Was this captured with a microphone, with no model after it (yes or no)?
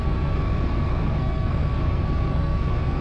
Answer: no